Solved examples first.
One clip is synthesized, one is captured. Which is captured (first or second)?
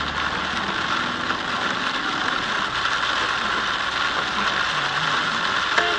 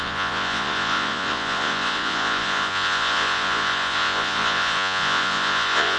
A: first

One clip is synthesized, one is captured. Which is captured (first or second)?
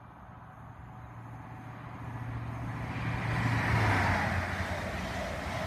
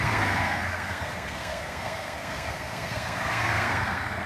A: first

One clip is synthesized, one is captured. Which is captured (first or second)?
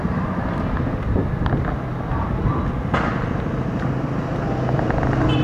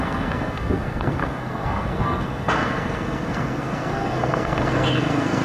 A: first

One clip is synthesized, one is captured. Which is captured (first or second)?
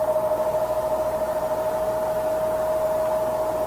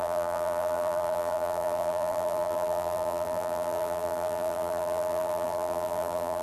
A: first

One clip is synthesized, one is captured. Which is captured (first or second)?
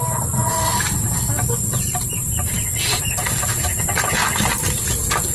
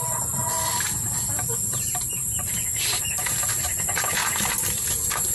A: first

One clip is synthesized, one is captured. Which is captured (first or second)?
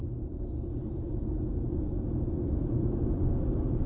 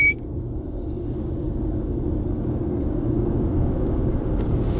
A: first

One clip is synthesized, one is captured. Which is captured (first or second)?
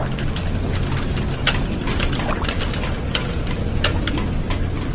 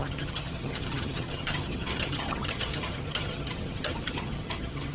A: first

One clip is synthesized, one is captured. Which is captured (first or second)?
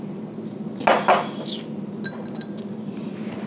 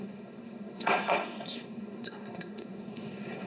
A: first